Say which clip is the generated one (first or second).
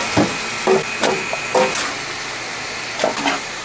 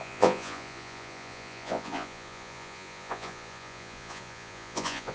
second